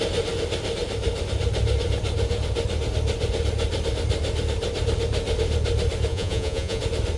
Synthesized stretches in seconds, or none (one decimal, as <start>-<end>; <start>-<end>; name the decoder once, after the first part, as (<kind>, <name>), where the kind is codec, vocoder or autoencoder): 6.1-6.8 (vocoder, Vocos)

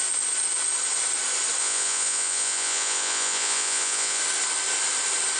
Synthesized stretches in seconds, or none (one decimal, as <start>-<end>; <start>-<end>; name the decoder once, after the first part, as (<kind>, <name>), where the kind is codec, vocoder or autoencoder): 1.6-4.2 (vocoder, Vocos)